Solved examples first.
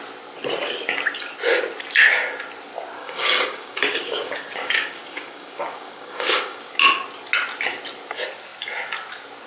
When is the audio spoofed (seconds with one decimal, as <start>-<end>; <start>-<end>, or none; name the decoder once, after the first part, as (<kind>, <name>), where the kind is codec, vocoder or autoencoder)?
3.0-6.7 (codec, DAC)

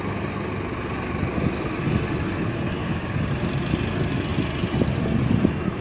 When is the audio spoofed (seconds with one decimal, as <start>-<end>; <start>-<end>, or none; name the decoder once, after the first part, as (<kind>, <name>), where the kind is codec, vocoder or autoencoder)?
2.8-3.3 (codec, DAC)

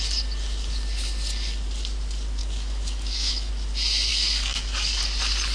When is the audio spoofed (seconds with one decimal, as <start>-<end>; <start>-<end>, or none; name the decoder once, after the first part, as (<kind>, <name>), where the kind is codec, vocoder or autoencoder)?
2.4-3.5 (codec, DAC); 4.1-5.0

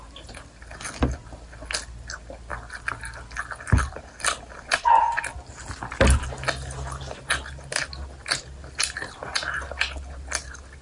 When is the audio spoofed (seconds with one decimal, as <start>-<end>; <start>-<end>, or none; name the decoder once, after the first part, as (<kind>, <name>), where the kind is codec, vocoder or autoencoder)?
none